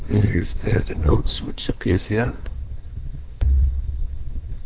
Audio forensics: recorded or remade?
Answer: remade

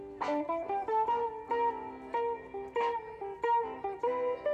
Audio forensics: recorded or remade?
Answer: recorded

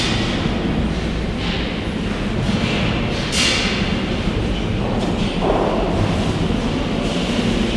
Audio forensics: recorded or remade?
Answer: recorded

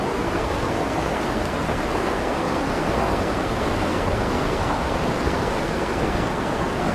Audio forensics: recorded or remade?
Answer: remade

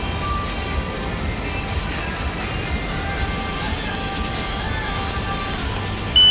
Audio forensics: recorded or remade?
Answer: recorded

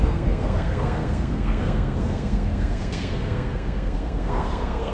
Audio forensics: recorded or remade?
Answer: remade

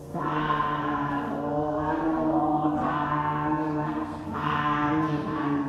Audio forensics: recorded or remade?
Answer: remade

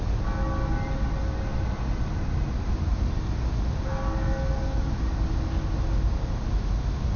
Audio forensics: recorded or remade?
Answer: recorded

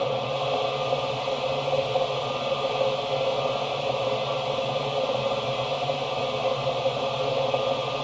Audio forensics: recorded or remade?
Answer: recorded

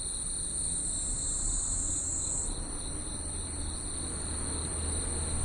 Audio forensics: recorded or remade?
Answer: recorded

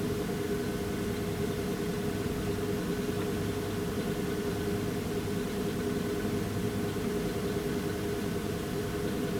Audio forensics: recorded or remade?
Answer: recorded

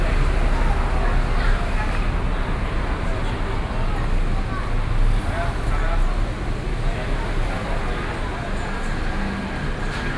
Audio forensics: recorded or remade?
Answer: recorded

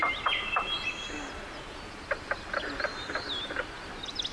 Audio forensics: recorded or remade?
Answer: recorded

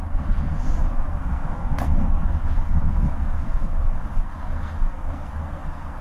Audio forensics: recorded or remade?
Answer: remade